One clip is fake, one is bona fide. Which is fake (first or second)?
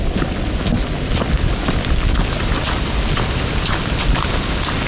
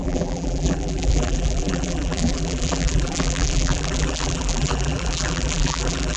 second